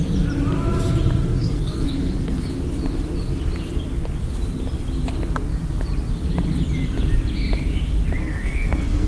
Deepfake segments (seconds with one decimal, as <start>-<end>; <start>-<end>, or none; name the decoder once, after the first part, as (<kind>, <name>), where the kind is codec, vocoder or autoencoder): 1.4-2.5 (codec, SNAC); 8.2-9.1